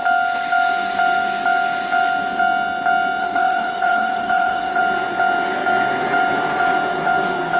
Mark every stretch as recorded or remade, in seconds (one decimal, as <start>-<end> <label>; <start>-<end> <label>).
0.0-3.2 recorded; 3.2-4.8 remade; 4.8-7.6 recorded